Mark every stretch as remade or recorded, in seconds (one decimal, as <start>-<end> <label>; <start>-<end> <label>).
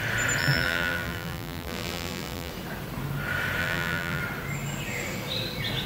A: 0.0-0.4 recorded; 0.4-2.5 remade; 2.5-3.6 recorded; 3.6-4.2 remade; 4.2-5.9 recorded